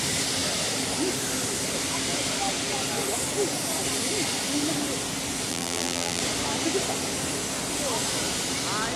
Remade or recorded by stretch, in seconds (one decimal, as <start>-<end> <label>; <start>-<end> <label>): 0.0-5.5 recorded; 5.5-6.2 remade; 6.2-9.0 recorded